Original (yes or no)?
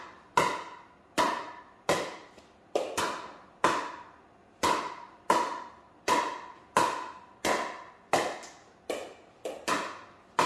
yes